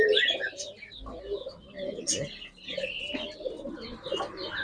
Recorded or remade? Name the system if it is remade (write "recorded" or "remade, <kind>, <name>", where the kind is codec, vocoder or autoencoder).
recorded